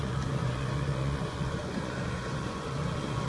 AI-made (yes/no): yes